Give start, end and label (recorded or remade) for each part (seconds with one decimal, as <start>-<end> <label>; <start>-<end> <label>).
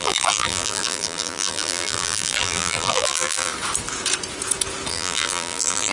0.0-3.5 remade; 3.5-4.9 recorded; 4.9-5.9 remade